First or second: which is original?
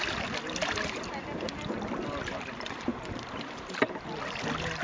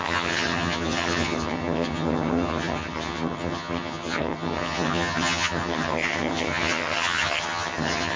first